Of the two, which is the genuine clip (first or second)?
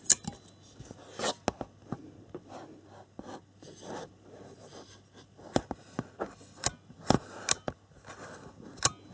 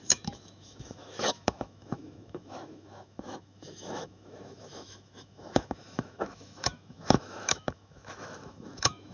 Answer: first